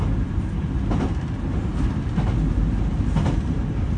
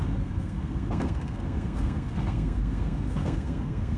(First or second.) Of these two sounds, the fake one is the second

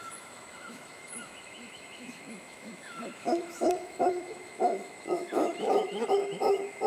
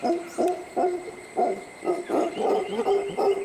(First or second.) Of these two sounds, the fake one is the first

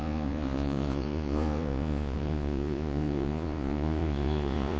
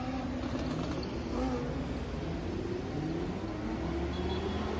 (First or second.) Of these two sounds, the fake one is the first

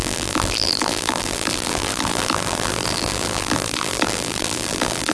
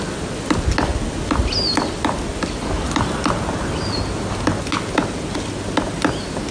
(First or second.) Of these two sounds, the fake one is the first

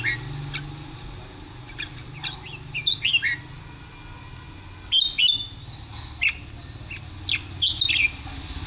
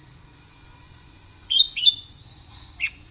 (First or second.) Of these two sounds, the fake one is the second